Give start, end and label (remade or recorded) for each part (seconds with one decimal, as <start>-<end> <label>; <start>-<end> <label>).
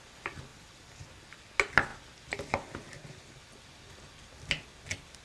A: 0.0-0.5 recorded; 0.5-1.1 remade; 1.1-5.2 recorded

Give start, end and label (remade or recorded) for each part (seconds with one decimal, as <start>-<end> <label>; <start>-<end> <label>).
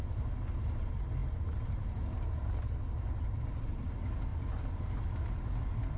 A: 0.0-6.0 recorded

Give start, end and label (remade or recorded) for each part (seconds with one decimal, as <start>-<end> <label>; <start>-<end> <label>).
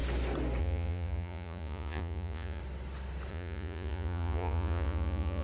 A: 0.0-0.6 recorded; 0.6-2.6 remade; 2.6-3.3 recorded; 3.3-5.4 remade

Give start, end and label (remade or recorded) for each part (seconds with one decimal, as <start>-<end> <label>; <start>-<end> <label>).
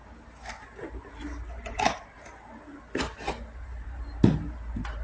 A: 0.0-5.0 remade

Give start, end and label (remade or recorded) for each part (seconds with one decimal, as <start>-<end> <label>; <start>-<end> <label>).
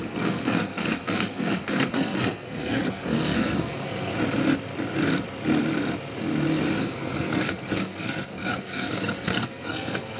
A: 0.0-4.1 remade; 4.1-6.8 recorded; 6.8-10.2 remade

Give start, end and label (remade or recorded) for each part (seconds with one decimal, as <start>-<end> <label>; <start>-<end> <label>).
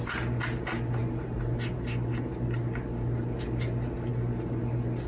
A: 0.0-5.1 recorded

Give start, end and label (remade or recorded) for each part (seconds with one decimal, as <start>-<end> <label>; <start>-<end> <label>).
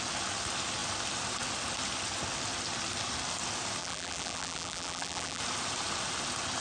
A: 0.0-3.8 recorded; 3.8-5.4 remade; 5.4-6.6 recorded